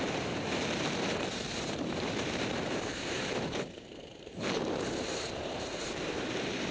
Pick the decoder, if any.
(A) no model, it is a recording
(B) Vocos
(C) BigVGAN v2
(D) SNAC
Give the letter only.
C